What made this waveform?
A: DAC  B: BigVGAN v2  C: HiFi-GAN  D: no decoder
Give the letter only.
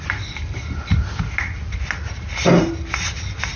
D